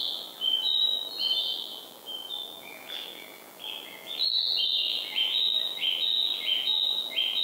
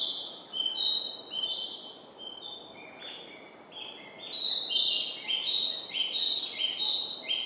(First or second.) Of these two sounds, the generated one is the first